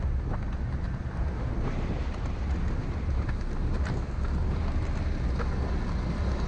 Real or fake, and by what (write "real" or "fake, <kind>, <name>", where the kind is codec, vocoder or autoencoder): real